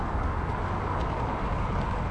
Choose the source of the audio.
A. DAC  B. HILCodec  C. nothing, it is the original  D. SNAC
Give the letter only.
A